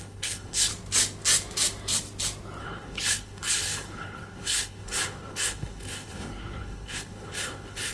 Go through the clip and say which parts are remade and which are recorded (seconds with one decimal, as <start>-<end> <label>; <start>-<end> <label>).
0.0-0.7 remade; 0.7-2.6 recorded; 2.6-7.9 remade